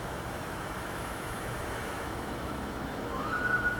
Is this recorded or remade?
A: remade